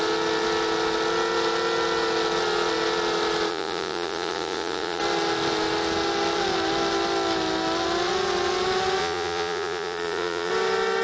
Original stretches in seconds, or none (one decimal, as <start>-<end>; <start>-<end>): 0.0-3.5; 5.0-9.0; 10.5-11.0